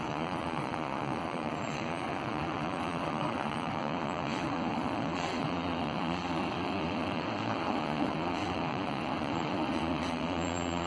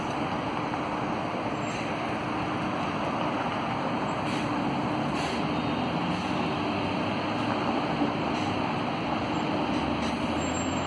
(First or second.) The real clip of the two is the second